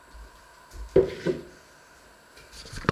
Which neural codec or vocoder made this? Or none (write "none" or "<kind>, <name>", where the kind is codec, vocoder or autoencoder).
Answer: vocoder, BigVGAN v2